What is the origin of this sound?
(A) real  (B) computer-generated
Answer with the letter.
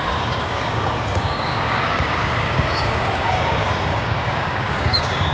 B